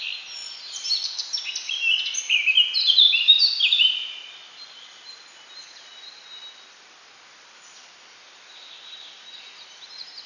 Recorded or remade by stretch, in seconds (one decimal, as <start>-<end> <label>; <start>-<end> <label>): 0.0-10.3 recorded